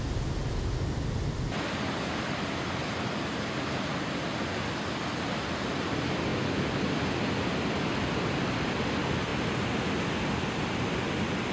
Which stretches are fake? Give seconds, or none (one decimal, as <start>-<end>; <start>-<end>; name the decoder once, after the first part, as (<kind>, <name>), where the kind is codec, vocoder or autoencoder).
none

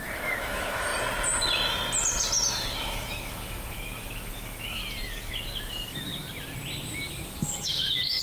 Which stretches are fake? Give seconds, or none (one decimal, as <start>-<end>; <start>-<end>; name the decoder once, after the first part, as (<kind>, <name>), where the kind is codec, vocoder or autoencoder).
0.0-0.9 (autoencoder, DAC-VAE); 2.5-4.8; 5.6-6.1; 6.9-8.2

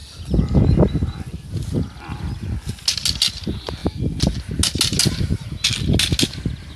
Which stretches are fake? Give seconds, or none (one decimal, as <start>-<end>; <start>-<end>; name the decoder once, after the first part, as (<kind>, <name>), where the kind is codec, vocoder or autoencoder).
none